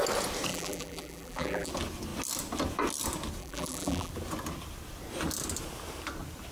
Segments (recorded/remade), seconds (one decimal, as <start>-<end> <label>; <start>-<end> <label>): 0.0-0.5 recorded; 0.5-1.7 remade; 1.7-3.4 recorded; 3.4-4.1 remade; 4.1-6.5 recorded